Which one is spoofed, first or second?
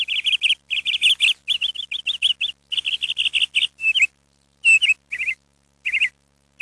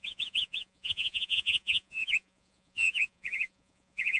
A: second